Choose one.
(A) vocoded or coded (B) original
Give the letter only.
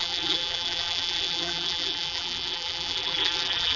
A